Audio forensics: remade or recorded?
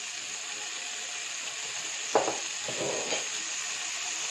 recorded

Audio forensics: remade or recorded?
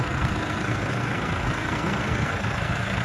remade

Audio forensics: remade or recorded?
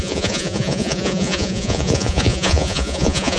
remade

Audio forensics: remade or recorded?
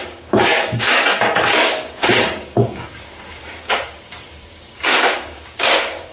remade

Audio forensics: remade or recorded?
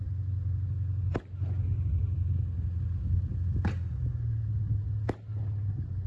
recorded